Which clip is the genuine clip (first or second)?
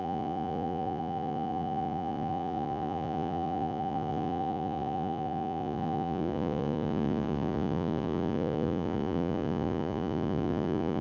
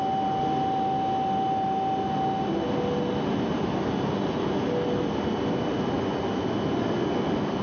second